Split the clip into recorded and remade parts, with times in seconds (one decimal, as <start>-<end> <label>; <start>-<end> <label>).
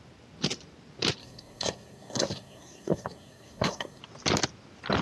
0.0-1.2 recorded; 1.2-4.0 remade; 4.0-5.0 recorded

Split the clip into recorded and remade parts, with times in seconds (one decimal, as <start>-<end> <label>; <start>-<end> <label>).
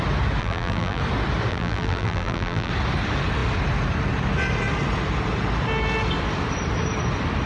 0.0-0.4 recorded; 0.4-1.0 remade; 1.0-1.5 recorded; 1.5-2.7 remade; 2.7-7.5 recorded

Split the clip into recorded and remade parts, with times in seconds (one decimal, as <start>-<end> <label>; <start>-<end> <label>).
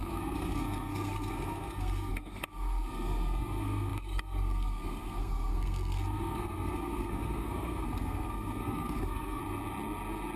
0.0-9.4 remade; 9.4-10.4 recorded